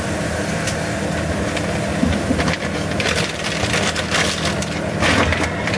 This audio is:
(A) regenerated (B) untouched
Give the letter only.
B